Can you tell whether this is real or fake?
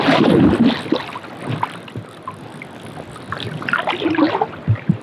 real